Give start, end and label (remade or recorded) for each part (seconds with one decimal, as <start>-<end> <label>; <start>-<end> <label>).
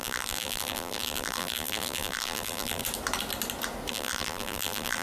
0.0-2.8 remade; 2.8-3.9 recorded; 3.9-5.0 remade